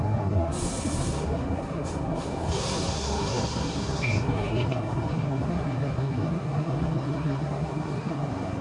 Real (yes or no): no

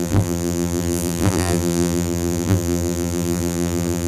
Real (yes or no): no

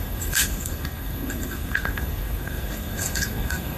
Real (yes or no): no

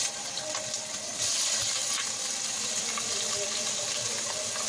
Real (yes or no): yes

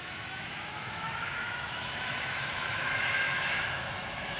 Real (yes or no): no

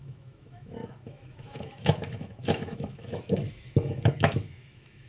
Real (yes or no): no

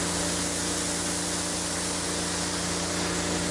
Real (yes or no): yes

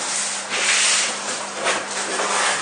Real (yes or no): yes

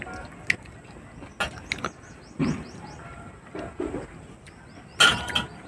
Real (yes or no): yes